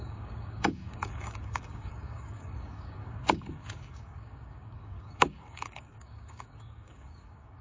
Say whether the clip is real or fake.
fake